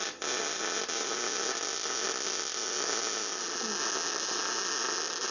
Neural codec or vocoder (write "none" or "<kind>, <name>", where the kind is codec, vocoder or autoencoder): none